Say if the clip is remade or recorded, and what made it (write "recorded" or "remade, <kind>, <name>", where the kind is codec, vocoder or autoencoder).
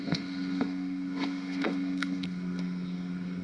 remade, codec, SNAC